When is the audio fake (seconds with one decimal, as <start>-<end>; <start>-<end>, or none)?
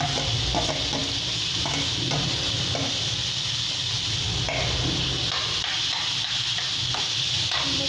none